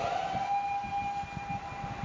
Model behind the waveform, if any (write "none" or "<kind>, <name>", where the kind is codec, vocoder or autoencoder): none